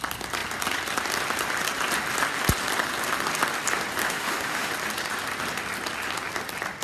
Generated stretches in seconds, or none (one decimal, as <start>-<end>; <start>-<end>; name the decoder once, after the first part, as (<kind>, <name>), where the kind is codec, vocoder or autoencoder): 4.0-4.7 (autoencoder, DAC-VAE)